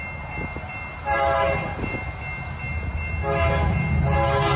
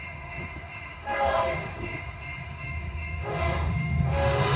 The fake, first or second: second